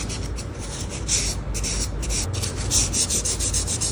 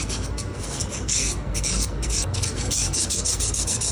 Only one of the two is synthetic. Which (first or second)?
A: second